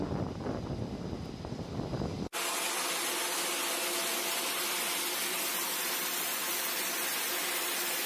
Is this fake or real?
real